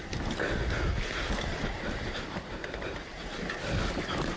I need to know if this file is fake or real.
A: real